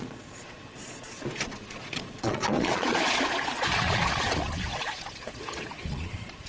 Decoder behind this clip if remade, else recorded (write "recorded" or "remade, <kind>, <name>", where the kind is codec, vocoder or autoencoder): remade, vocoder, Vocos